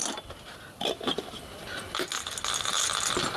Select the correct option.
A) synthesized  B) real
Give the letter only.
B